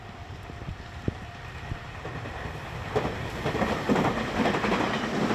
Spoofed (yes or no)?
no